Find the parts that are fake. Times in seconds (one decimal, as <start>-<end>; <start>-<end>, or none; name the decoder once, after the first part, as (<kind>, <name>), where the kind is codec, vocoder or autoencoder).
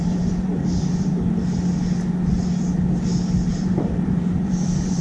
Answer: 0.0-0.5 (vocoder, BigVGAN v2); 3.5-5.0